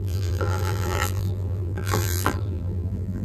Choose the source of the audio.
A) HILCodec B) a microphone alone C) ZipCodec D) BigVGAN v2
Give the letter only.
D